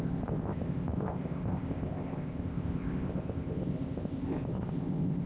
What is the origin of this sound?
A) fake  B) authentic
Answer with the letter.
A